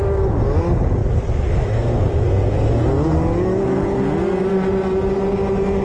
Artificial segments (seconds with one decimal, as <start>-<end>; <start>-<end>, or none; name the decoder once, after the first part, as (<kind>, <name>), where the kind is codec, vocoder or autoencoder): none